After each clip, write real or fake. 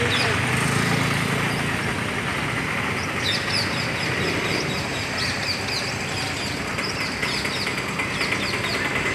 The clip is real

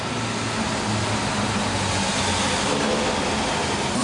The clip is real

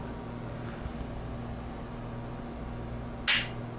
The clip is real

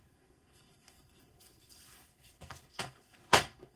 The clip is fake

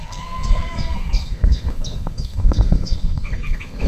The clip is fake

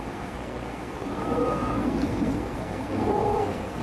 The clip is fake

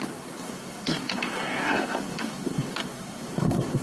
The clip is fake